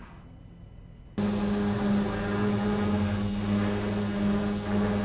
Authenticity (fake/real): real